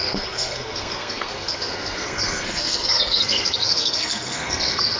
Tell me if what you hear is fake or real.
fake